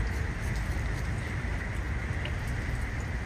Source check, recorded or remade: recorded